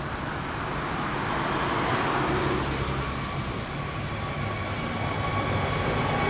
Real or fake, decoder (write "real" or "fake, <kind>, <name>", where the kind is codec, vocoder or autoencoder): real